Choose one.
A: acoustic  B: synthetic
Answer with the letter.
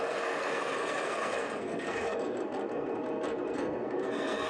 B